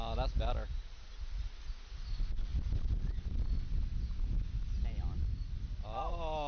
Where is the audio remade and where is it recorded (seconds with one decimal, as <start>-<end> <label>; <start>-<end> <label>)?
0.0-6.5 recorded